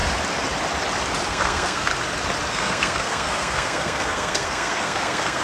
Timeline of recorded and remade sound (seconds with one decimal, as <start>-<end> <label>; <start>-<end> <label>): 0.0-1.3 recorded; 1.3-1.9 remade; 1.9-2.5 recorded; 2.5-5.4 remade